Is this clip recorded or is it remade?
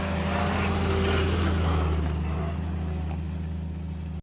recorded